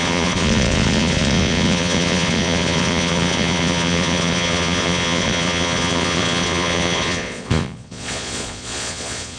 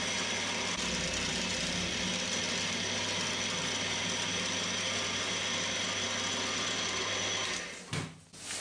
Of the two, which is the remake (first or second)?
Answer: first